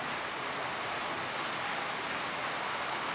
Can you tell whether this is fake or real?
real